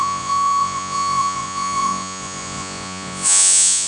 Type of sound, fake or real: fake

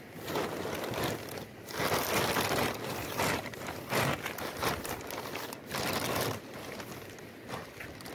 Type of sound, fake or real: real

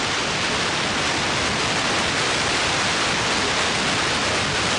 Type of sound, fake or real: real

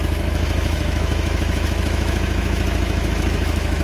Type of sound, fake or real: fake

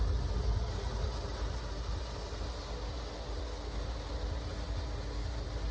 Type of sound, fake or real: real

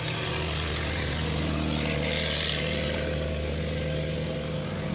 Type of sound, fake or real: real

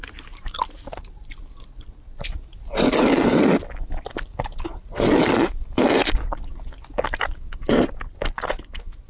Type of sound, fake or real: real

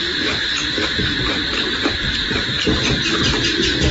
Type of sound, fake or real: real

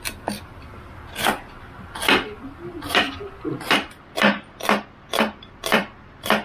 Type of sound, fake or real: fake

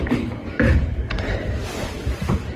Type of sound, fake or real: fake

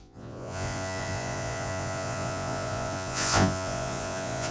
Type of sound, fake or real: fake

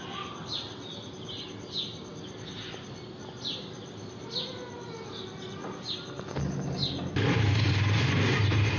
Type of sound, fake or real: real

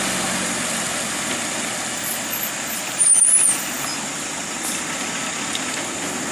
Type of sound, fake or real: real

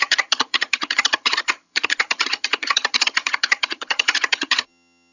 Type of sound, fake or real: fake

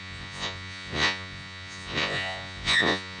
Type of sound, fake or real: fake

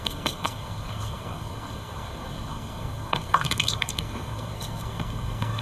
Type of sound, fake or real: fake